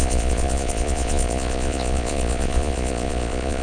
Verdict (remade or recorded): remade